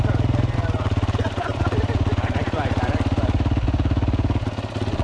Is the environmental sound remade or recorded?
recorded